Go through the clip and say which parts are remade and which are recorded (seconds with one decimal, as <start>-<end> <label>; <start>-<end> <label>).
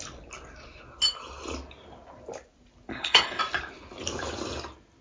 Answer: 0.0-2.9 recorded; 2.9-3.4 remade; 3.4-5.0 recorded